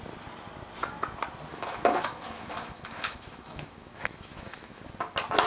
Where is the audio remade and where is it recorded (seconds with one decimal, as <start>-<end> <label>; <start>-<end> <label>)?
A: 0.0-1.5 recorded; 1.5-4.8 remade; 4.8-5.5 recorded